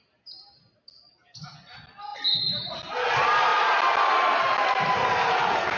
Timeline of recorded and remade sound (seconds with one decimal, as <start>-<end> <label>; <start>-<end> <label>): 0.0-5.8 recorded